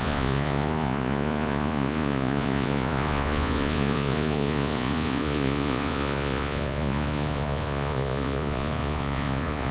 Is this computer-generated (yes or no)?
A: yes